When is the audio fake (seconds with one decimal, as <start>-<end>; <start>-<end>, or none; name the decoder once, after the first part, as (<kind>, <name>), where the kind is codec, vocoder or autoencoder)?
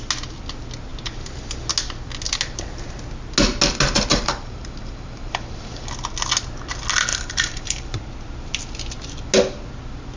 4.1-5.9 (vocoder, BigVGAN v2); 7.1-8.0